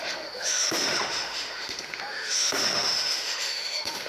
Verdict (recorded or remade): remade